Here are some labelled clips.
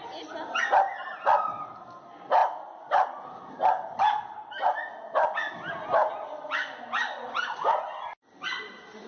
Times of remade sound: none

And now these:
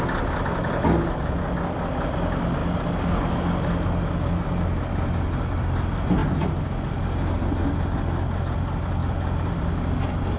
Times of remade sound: none

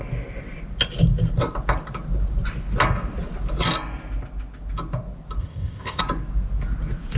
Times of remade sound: 5.4-6.0 (codec, ZipCodec)